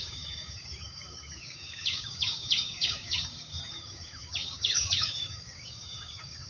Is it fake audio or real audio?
fake